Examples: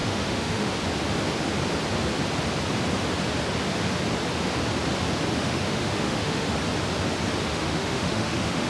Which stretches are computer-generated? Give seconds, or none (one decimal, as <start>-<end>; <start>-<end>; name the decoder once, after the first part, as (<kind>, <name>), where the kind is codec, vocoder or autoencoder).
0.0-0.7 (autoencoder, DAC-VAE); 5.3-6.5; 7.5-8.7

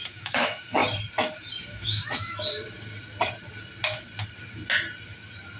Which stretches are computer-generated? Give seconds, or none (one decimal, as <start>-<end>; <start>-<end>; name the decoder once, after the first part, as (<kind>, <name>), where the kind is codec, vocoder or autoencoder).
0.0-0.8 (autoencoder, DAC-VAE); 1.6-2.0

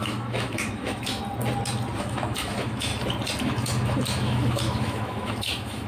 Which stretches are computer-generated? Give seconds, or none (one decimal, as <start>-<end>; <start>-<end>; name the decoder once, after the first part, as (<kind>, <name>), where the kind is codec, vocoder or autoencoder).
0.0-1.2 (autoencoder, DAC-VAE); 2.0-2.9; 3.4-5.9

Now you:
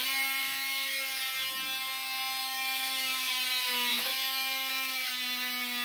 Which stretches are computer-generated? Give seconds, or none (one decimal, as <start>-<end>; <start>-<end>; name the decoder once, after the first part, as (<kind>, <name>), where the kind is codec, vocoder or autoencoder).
0.4-1.2 (autoencoder, DAC-VAE); 2.4-3.3; 3.9-5.1

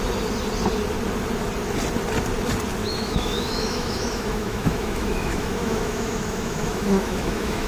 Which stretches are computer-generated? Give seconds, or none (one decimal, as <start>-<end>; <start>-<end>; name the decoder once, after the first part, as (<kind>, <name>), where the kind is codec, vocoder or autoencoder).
2.8-7.7 (autoencoder, DAC-VAE)